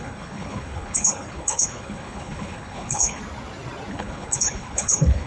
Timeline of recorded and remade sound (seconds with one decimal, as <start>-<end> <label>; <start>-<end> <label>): 0.0-3.2 remade; 3.2-3.9 recorded; 3.9-5.3 remade